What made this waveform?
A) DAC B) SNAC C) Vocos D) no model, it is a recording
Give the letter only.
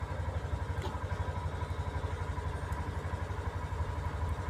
D